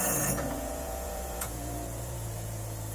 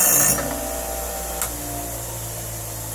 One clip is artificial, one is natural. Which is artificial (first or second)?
first